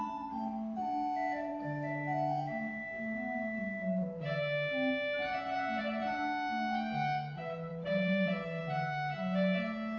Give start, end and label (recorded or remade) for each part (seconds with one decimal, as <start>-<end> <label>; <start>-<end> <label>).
0.0-7.7 recorded; 7.7-8.6 remade; 8.6-10.0 recorded